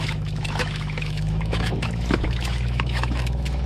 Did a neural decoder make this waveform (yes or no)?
yes